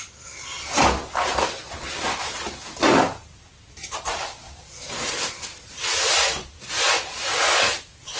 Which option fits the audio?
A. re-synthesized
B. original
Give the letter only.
B